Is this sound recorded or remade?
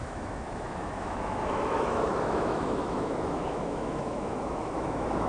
remade